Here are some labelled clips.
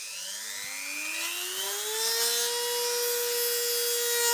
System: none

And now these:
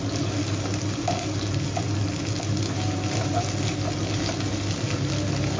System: none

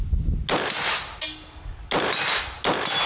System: none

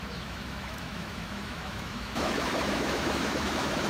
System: autoencoder, DAC-VAE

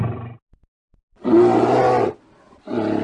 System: none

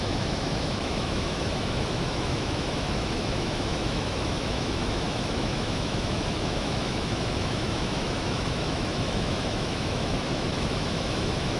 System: autoencoder, DAC-VAE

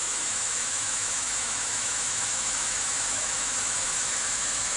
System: autoencoder, DAC-VAE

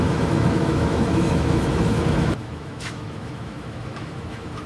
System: autoencoder, DAC-VAE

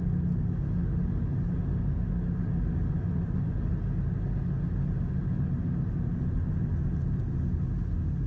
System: none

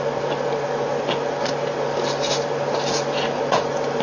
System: none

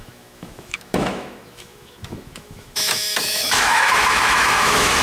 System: autoencoder, DAC-VAE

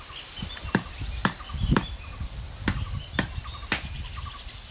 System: none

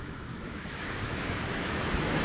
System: autoencoder, DAC-VAE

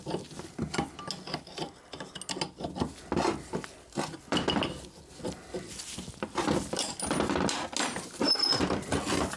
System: none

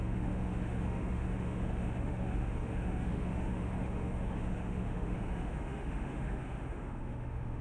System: autoencoder, DAC-VAE